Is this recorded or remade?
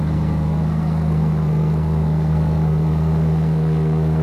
remade